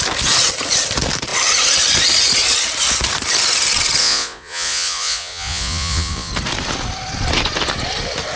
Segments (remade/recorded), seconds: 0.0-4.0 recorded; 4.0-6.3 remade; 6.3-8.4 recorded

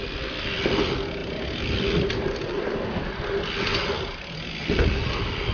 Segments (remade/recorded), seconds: 0.0-5.5 recorded

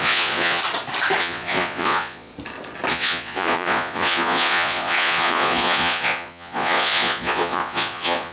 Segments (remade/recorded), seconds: 0.0-0.6 remade; 0.6-1.2 recorded; 1.2-2.3 remade; 2.3-2.9 recorded; 2.9-8.3 remade

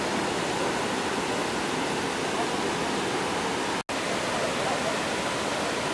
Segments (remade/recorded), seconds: 0.0-5.9 recorded

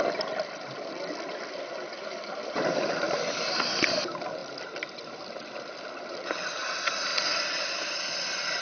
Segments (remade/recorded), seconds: 0.0-8.6 recorded

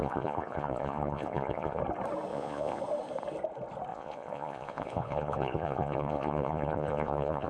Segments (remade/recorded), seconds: 0.0-1.8 remade; 1.8-2.3 recorded; 2.3-2.8 remade; 2.8-3.9 recorded; 3.9-7.5 remade